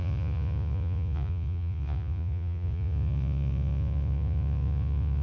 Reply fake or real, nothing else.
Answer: fake